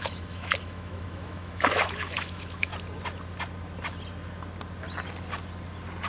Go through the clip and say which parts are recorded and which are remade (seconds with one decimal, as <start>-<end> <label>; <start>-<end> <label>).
0.0-2.7 remade; 2.7-6.1 recorded